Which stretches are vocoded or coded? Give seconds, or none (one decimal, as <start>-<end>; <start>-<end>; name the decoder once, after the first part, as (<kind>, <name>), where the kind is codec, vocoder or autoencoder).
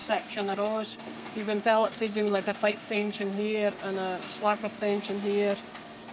0.0-3.7 (codec, SNAC); 4.2-5.1